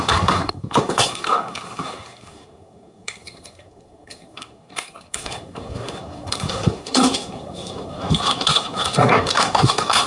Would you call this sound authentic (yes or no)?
no